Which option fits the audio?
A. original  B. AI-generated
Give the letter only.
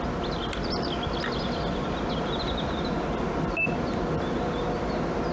A